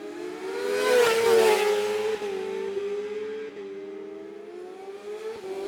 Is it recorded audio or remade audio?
recorded